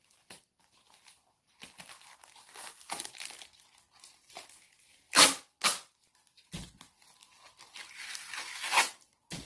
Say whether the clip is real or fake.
real